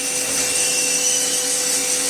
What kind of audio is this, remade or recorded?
remade